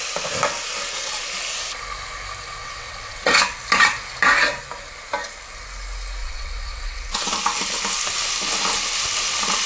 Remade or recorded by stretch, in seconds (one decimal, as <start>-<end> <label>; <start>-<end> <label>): 0.0-2.6 recorded; 2.6-3.3 remade; 3.3-6.2 recorded; 6.2-7.3 remade; 7.3-9.7 recorded